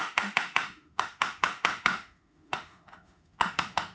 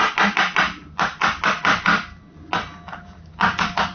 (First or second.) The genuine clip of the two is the second